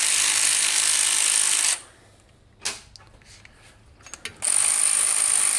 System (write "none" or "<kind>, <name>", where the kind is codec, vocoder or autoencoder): none